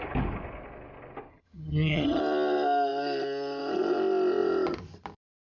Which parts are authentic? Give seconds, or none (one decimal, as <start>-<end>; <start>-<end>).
0.0-1.3; 2.2-5.5